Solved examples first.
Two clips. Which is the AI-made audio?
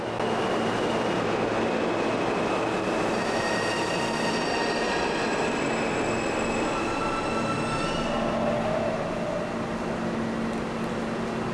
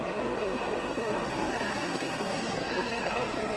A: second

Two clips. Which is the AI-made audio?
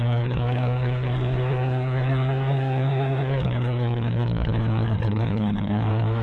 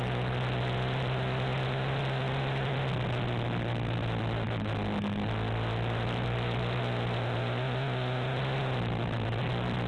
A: first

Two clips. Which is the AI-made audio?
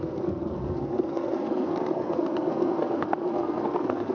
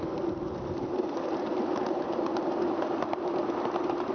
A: first